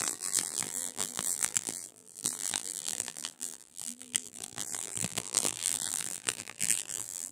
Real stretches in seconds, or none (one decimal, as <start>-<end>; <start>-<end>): none